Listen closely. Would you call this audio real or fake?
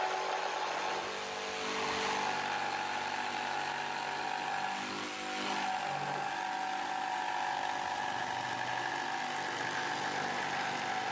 real